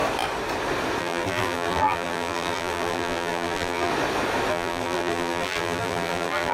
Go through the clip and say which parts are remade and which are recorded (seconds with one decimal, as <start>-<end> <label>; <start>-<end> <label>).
0.0-1.0 recorded; 1.0-3.9 remade; 3.9-4.5 recorded; 4.5-6.5 remade